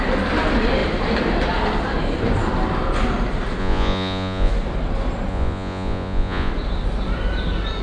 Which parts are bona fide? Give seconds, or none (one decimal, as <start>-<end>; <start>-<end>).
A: 0.0-3.6; 4.5-5.3; 6.5-7.8